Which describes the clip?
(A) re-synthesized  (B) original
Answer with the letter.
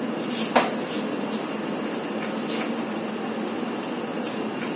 B